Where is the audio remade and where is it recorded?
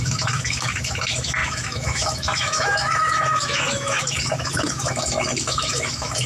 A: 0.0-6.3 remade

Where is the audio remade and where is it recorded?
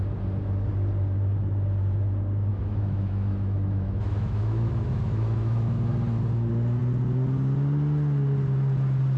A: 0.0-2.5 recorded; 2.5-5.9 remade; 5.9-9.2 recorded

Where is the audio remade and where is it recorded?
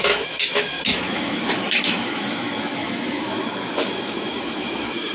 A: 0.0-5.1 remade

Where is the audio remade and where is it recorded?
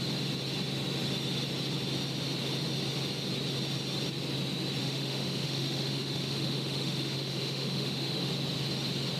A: 0.0-4.8 recorded; 4.8-8.3 remade; 8.3-9.2 recorded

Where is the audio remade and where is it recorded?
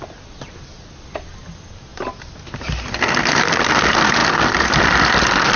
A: 0.0-5.6 recorded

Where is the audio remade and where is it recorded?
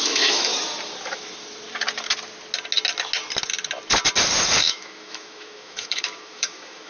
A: 0.0-0.5 remade; 0.5-4.6 recorded; 4.6-6.9 remade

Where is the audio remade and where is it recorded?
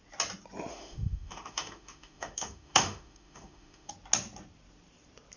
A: 0.0-0.7 recorded; 0.7-3.9 remade; 3.9-5.4 recorded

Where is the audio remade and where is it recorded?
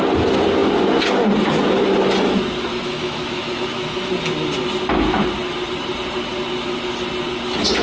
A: 0.0-2.7 recorded; 2.7-4.1 remade; 4.1-7.8 recorded